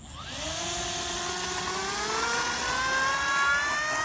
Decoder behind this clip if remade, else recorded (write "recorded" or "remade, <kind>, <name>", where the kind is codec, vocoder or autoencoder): recorded